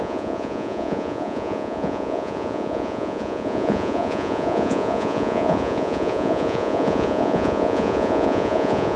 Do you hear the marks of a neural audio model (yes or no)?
yes